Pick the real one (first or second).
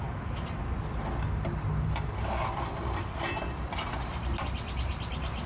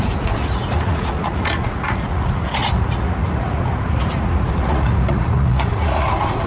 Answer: first